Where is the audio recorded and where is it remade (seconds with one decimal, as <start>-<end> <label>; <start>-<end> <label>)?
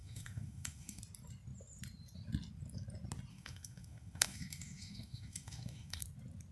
0.0-1.0 remade; 1.0-3.3 recorded; 3.3-6.0 remade; 6.0-6.5 recorded